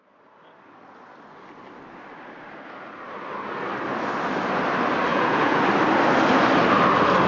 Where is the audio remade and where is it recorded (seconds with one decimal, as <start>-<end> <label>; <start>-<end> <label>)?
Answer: 0.0-5.1 recorded; 5.1-5.6 remade; 5.6-7.3 recorded